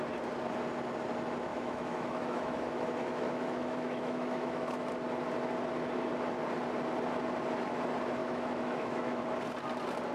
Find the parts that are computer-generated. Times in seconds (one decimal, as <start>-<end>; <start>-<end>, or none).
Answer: 1.5-4.9; 8.2-9.2